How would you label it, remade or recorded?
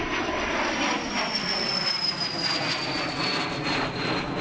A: recorded